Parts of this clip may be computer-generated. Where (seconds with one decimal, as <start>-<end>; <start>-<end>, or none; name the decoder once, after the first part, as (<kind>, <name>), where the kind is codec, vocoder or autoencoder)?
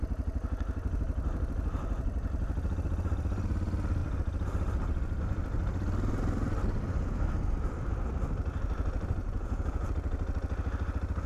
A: 9.2-9.9 (vocoder, Vocos)